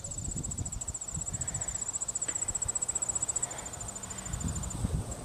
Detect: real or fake real